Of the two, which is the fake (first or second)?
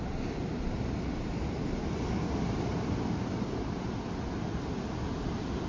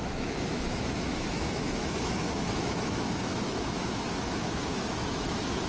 second